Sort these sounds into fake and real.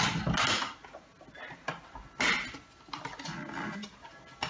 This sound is real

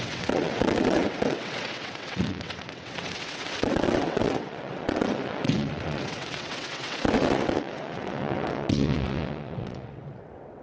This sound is fake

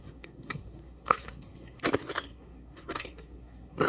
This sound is fake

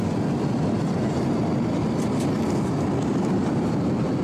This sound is real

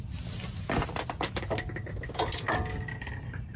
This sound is real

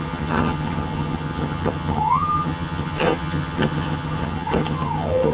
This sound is fake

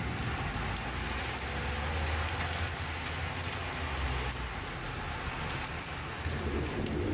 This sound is real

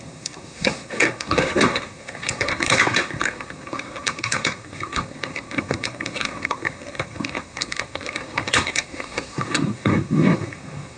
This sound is fake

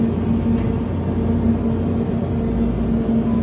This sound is real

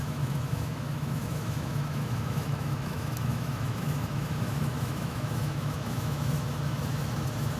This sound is fake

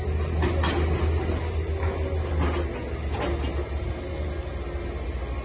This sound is real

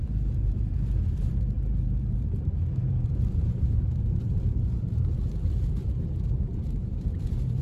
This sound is fake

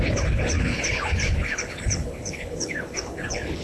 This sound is fake